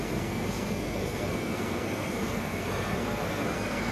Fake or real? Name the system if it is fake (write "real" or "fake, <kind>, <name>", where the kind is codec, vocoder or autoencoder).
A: fake, codec, SNAC